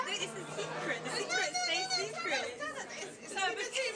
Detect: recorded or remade recorded